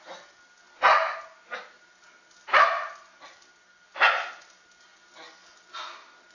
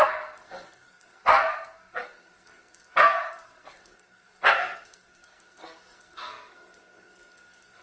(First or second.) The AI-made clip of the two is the second